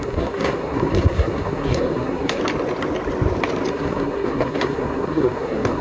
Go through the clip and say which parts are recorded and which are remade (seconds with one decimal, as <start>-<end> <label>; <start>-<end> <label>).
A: 0.0-2.4 remade; 2.4-3.7 recorded; 3.7-5.8 remade